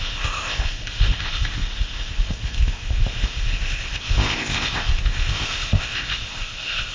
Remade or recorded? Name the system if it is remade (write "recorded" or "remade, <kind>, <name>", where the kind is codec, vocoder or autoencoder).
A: remade, codec, ZipCodec